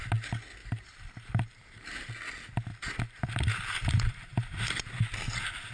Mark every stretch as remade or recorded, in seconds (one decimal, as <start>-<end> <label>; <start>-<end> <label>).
0.0-0.6 recorded; 0.6-2.1 remade; 2.1-2.7 recorded; 2.7-4.9 remade; 4.9-5.7 recorded